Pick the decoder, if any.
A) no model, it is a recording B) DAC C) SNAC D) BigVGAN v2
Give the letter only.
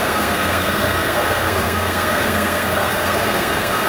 C